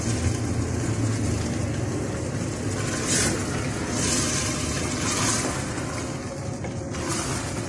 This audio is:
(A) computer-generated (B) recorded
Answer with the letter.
B